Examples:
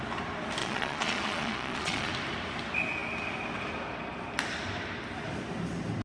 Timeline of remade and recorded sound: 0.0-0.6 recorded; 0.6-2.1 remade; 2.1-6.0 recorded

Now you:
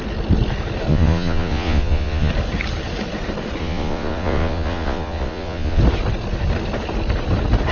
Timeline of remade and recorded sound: 0.0-0.9 recorded; 0.9-2.3 remade; 2.3-3.6 recorded; 3.6-5.8 remade; 5.8-7.7 recorded

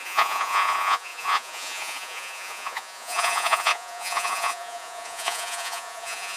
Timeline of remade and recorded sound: 0.0-6.4 remade

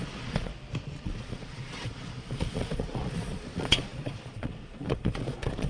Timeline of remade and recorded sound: 0.0-0.5 remade; 0.5-1.0 recorded; 1.0-5.7 remade

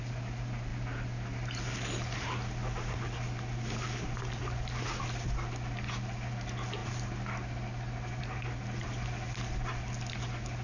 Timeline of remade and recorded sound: 0.0-10.6 recorded

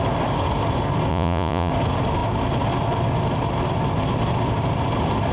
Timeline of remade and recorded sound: 0.0-1.1 recorded; 1.1-1.7 remade; 1.7-5.3 recorded

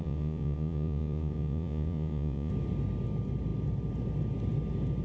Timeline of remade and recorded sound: 0.0-2.5 remade; 2.5-5.0 recorded

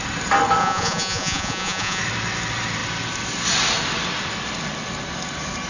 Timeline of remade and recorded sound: 0.0-0.6 recorded; 0.6-2.0 remade; 2.0-5.7 recorded